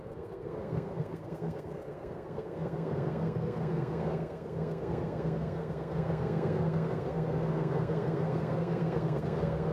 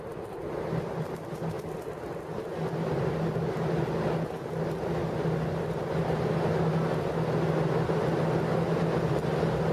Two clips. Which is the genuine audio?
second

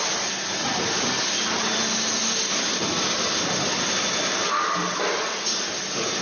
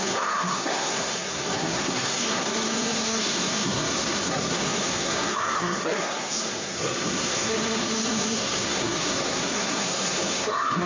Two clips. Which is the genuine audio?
first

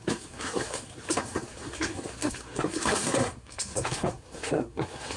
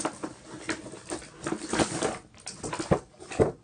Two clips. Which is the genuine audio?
second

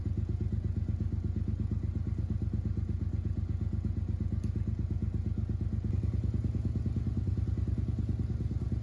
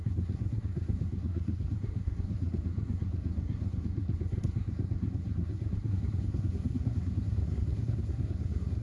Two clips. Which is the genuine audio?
first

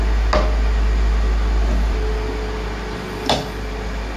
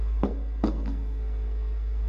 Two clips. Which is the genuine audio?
first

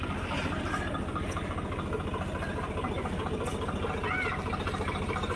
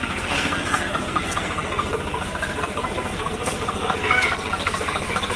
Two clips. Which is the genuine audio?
first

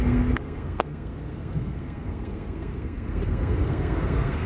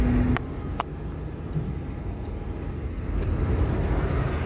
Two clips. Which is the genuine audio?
second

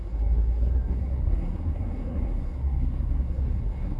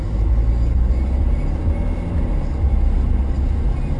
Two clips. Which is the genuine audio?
second